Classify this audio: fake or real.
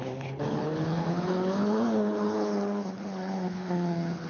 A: fake